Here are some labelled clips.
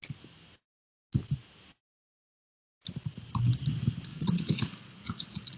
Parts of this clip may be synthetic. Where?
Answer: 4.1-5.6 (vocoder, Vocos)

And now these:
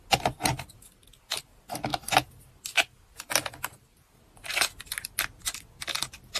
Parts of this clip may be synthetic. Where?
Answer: none

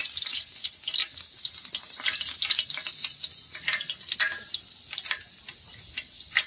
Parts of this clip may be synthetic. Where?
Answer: 0.0-0.6 (vocoder, BigVGAN v2)